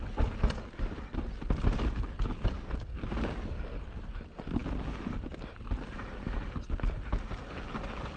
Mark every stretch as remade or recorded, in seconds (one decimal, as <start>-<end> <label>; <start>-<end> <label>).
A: 0.0-8.2 recorded